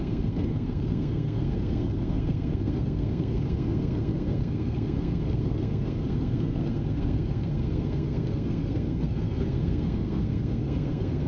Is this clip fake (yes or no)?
yes